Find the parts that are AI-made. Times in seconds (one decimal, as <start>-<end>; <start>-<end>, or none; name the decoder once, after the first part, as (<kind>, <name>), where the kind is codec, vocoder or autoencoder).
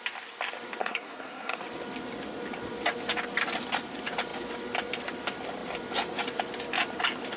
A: 0.8-1.6 (codec, SNAC)